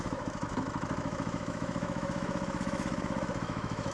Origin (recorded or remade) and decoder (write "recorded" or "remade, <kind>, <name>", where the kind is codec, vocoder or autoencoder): remade, autoencoder, DAC-VAE